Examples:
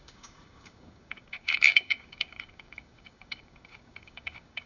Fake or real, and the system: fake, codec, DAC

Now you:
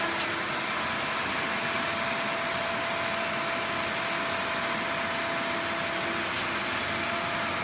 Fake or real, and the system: real